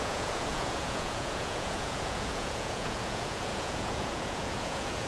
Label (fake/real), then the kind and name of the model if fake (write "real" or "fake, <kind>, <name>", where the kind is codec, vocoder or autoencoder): fake, vocoder, Vocos